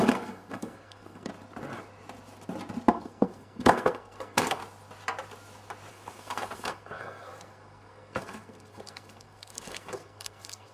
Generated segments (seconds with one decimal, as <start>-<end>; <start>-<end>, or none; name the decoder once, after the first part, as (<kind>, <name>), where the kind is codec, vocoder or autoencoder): 0.0-1.3 (codec, SNAC); 2.9-4.6; 5.9-10.7